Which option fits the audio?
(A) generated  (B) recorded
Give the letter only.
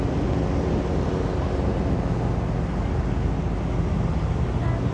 B